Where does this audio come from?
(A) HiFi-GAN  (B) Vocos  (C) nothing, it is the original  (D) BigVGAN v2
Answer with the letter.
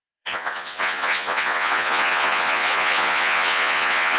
B